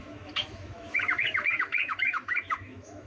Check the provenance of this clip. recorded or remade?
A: remade